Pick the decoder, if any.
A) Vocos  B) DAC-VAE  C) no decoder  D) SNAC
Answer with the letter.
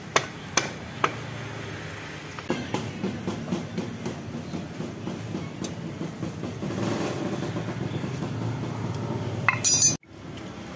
C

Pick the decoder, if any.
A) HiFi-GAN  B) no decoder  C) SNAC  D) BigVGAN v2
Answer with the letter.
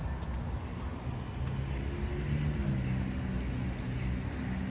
B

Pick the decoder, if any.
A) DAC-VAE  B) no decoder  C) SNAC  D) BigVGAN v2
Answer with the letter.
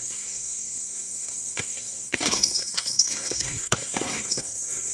C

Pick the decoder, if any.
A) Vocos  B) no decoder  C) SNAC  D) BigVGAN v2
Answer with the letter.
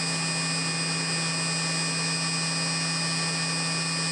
B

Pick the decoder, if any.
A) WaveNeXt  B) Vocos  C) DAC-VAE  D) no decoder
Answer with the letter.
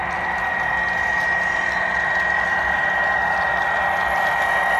D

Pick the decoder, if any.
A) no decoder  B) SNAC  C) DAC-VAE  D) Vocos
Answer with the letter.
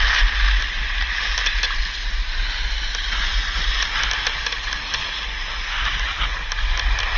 A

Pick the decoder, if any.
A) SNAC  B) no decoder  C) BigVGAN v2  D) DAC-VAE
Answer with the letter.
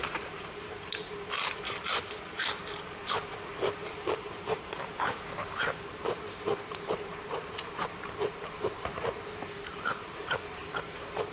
C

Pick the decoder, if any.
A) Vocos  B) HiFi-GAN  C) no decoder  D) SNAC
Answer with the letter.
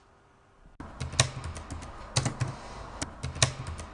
C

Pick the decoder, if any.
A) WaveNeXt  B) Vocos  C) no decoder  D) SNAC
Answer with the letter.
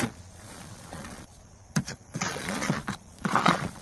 B